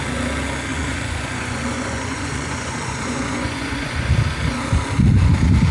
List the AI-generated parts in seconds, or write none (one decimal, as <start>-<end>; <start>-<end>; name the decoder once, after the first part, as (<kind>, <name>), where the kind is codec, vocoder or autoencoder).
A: 0.7-4.1 (vocoder, Vocos)